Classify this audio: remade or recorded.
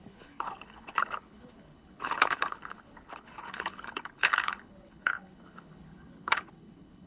remade